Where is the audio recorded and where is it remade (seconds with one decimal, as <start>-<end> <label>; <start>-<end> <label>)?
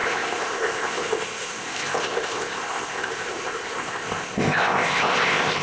0.0-5.6 remade